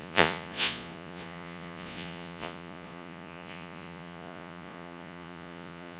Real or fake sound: fake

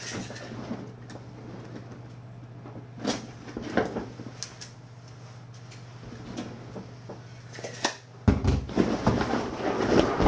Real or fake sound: real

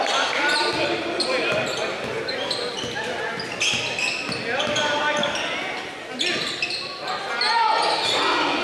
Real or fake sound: real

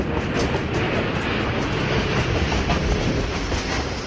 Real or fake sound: fake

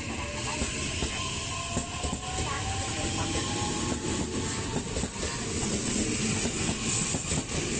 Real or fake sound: real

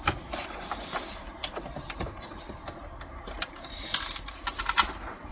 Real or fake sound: fake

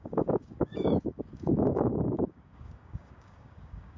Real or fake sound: fake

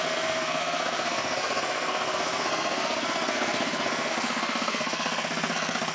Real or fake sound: fake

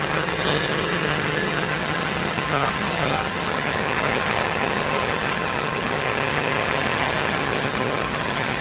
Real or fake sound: fake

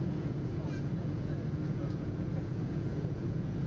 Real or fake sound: fake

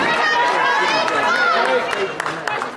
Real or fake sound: real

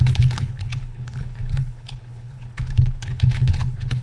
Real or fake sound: fake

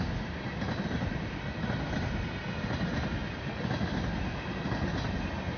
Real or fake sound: real